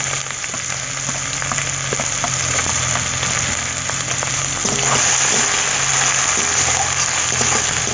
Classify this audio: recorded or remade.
recorded